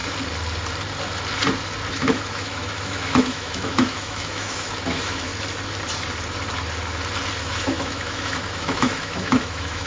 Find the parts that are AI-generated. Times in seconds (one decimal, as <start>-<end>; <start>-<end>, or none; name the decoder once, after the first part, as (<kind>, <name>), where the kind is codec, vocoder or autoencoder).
1.9-5.3 (autoencoder, DAC-VAE); 7.4-9.9